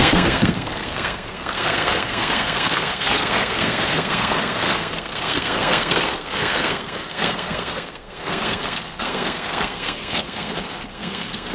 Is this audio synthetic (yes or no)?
yes